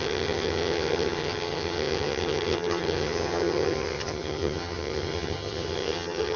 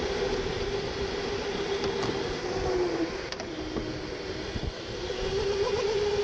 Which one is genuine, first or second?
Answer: second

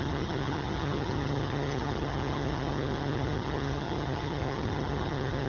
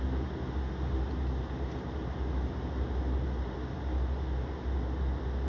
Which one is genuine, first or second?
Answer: second